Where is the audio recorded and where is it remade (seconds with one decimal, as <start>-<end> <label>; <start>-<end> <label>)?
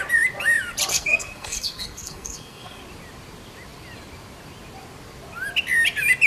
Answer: 0.0-0.9 recorded; 0.9-2.8 remade; 2.8-6.3 recorded